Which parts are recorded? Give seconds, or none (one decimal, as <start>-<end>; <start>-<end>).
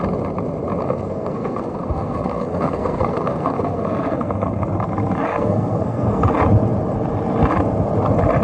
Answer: 0.0-0.8; 4.6-5.3; 6.2-8.4